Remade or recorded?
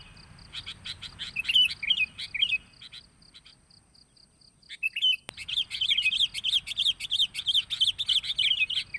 recorded